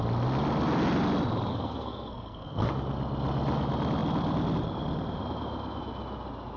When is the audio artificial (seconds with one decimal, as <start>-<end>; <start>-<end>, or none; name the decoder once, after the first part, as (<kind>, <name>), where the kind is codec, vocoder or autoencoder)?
1.5-2.7 (codec, SNAC)